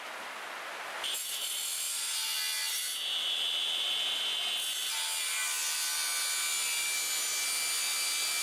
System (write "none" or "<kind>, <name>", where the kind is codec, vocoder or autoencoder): none